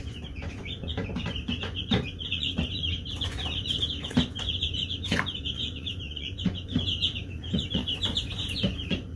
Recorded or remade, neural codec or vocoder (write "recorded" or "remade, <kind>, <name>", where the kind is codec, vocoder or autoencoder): remade, vocoder, Vocos